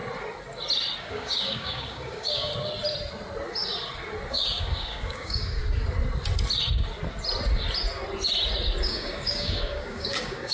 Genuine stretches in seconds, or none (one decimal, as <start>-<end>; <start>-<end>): 0.0-1.0; 2.5-4.3; 5.6-8.8